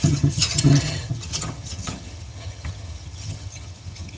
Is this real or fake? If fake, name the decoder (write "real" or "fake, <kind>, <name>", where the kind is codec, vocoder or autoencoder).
fake, vocoder, HiFi-GAN